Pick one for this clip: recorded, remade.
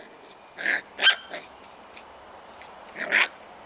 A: recorded